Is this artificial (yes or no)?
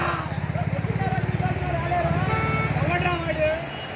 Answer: no